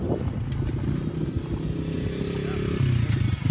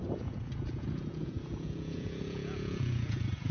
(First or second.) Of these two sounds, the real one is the first